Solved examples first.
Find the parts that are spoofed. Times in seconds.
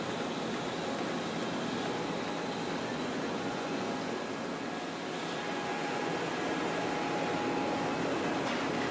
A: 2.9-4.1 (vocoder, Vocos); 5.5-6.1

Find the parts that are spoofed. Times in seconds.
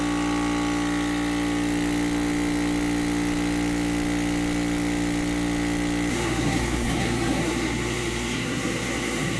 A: 6.1-9.4 (codec, SNAC)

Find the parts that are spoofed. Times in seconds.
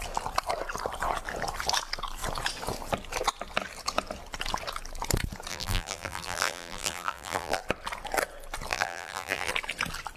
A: 5.5-7.6 (vocoder, BigVGAN v2); 8.7-9.5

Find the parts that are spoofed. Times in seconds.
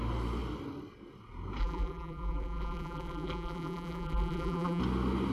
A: 1.6-4.8 (vocoder, BigVGAN v2)